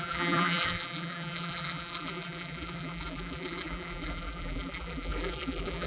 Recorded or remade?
remade